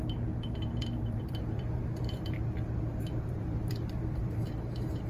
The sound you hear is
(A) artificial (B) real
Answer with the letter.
A